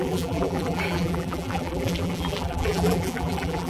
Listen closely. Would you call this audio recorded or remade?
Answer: remade